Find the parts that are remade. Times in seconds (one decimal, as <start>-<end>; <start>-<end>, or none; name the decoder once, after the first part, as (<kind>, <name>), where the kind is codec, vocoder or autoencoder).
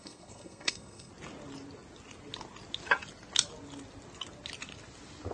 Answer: 0.0-1.1 (codec, SNAC)